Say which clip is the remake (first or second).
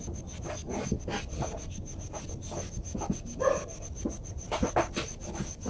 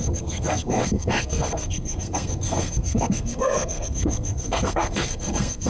second